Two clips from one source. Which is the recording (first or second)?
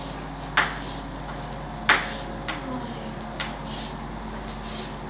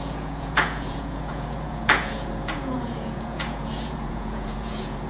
first